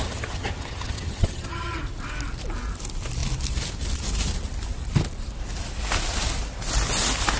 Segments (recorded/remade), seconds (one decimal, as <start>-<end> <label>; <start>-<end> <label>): 0.0-1.8 remade; 1.8-7.4 recorded